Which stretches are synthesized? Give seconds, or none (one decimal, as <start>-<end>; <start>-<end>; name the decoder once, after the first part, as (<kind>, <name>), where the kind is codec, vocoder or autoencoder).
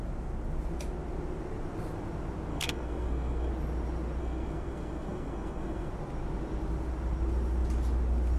2.5-3.5 (codec, SNAC); 4.2-5.9